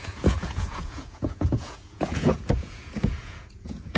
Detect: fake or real fake